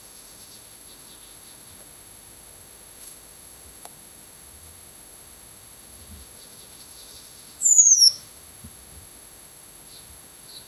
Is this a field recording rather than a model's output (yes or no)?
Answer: no